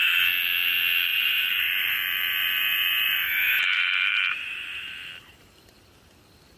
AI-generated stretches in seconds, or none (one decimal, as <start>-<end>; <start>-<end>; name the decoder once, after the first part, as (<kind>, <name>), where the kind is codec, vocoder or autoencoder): 1.1-5.1 (vocoder, BigVGAN v2)

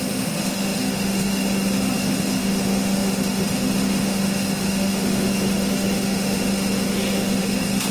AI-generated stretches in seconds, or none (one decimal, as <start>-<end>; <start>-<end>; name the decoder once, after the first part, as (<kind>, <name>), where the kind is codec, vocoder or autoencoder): 0.0-7.9 (autoencoder, DAC-VAE)

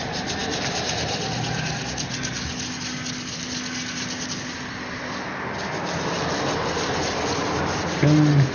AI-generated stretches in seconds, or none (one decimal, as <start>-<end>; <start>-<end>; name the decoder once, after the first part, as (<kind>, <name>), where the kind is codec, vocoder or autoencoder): none

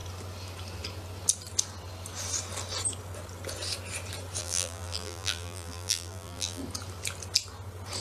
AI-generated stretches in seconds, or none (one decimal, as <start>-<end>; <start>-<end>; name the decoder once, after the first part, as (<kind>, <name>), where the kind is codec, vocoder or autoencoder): 4.4-6.6 (vocoder, BigVGAN v2)